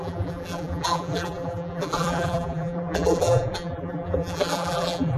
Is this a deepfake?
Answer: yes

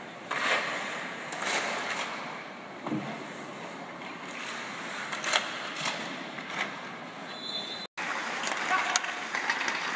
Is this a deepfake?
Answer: no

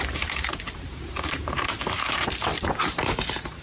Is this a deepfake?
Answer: yes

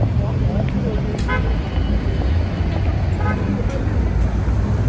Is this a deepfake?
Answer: no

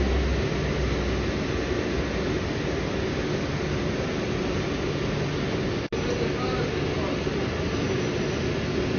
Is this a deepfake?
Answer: no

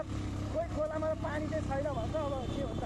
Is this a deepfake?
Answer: no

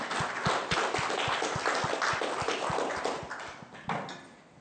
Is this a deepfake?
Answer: no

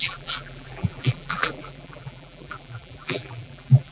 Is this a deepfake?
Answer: yes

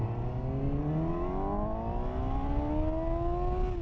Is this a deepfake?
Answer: no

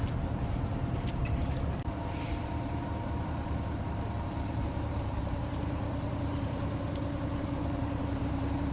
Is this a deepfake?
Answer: yes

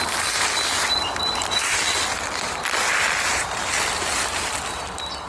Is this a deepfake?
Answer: no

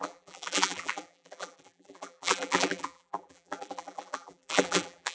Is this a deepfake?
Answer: yes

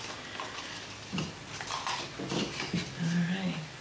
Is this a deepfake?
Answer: no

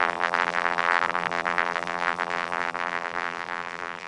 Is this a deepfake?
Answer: yes